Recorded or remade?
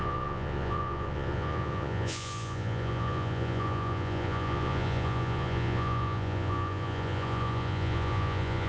remade